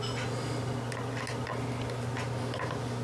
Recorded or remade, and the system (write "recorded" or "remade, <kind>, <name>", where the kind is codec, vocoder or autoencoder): recorded